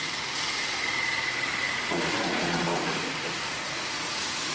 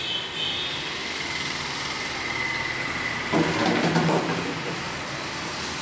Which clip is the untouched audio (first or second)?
second